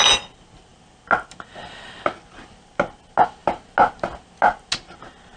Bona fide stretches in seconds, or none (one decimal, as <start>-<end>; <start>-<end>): 0.0-5.4